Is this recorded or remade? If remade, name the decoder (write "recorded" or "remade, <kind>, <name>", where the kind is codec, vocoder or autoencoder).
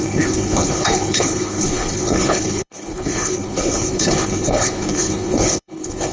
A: remade, codec, HILCodec